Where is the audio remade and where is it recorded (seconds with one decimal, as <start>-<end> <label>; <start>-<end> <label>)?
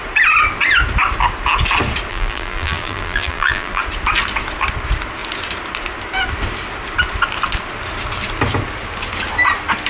0.0-2.1 recorded; 2.1-3.8 remade; 3.8-9.9 recorded